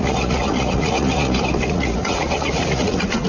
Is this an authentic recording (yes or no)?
no